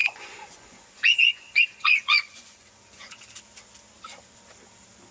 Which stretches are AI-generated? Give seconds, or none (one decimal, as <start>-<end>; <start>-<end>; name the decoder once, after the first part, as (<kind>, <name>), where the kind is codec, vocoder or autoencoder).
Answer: 0.0-3.1 (vocoder, Vocos)